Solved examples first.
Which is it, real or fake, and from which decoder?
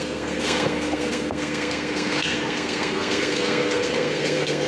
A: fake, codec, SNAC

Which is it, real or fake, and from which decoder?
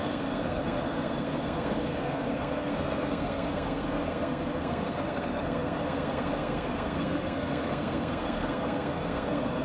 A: fake, codec, SNAC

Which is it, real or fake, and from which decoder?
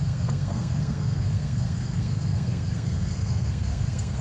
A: fake, codec, SNAC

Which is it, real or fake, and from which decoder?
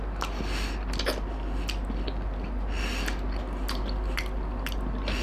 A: real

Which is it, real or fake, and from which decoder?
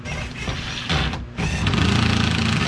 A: real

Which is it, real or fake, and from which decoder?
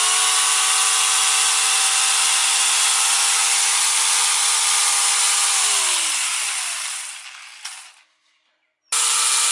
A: real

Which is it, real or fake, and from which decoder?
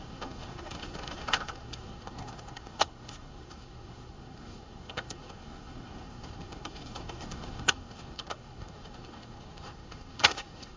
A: fake, codec, SNAC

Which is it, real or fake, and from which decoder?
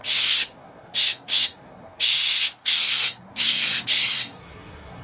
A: fake, codec, SNAC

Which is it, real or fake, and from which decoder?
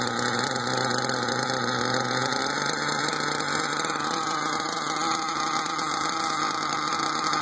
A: real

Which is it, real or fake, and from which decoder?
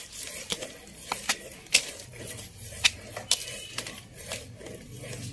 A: real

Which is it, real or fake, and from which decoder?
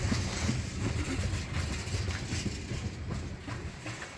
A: real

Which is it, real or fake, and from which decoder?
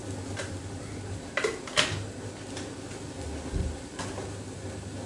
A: real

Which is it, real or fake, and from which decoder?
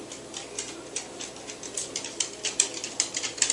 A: real